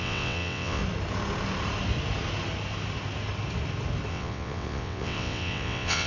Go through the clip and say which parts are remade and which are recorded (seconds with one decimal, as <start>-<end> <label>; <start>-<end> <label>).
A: 0.0-0.8 remade; 0.8-4.1 recorded; 4.1-6.1 remade